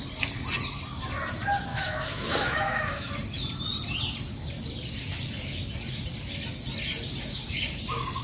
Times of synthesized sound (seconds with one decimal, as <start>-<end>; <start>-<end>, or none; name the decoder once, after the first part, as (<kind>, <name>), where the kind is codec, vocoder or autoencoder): 1.7-3.1 (autoencoder, DAC-VAE)